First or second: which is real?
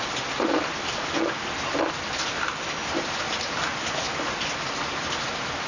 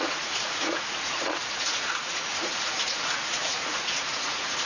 first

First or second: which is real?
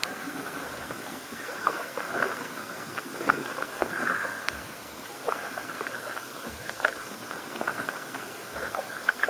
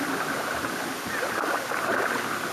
second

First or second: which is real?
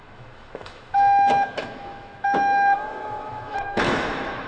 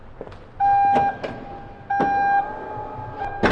second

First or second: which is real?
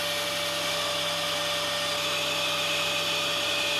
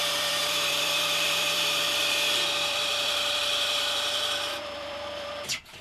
first